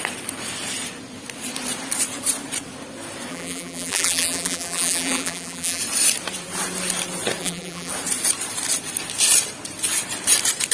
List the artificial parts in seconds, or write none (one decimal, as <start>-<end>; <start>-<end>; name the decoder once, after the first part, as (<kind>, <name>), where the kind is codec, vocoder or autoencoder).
3.3-5.8 (vocoder, BigVGAN v2); 7.4-7.9